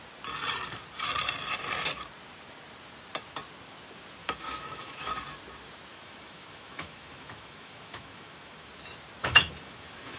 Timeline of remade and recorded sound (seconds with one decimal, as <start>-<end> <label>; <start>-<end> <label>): 0.0-4.2 recorded; 4.2-5.1 remade; 5.1-5.9 recorded; 5.9-8.7 remade; 8.7-9.2 recorded; 9.2-10.2 remade